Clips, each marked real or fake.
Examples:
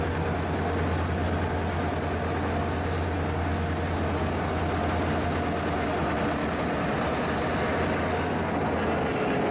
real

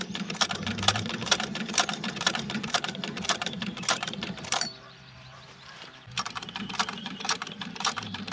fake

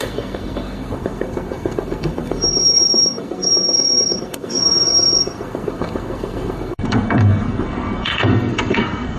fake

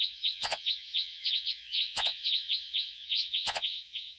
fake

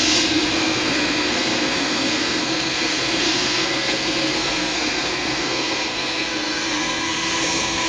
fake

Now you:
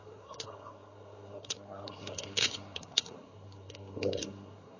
fake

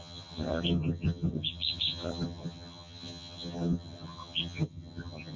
fake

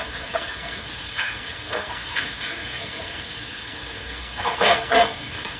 fake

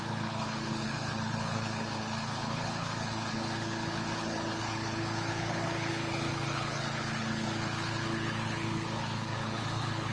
fake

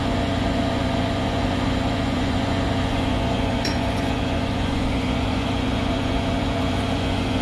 fake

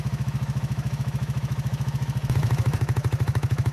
fake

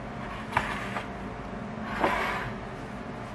real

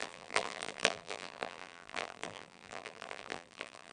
fake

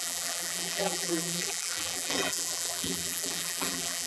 fake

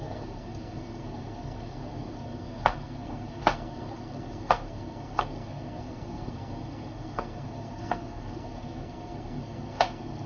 fake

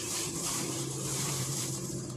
fake